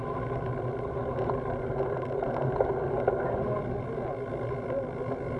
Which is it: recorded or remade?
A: recorded